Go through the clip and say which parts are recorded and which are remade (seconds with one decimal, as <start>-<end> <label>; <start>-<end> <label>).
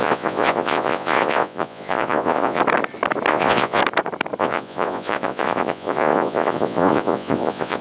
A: 0.0-2.6 remade; 2.6-3.3 recorded; 3.3-3.8 remade; 3.8-4.4 recorded; 4.4-7.8 remade